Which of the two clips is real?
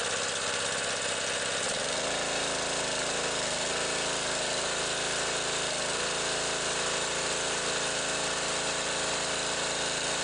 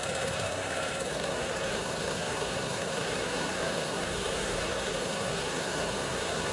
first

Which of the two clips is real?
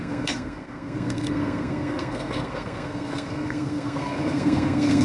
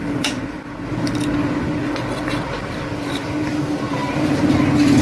second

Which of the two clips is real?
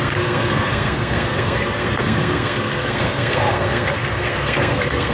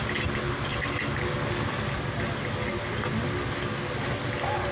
second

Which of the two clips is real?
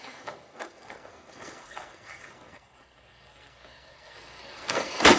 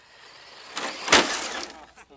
second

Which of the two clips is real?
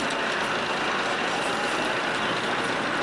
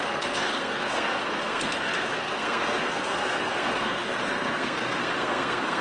first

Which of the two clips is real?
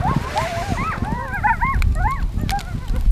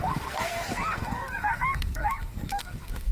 first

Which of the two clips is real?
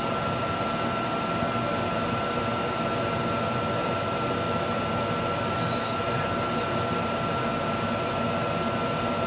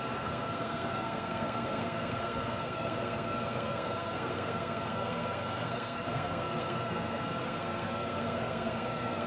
first